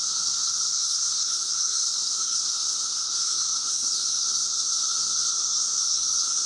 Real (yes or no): no